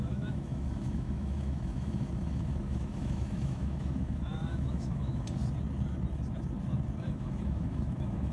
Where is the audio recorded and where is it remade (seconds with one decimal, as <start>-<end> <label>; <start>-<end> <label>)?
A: 0.0-5.4 remade; 5.4-7.1 recorded; 7.1-8.3 remade